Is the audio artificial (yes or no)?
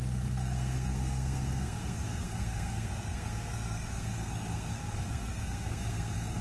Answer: yes